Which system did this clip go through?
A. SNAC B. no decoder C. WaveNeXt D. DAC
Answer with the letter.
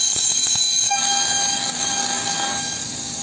D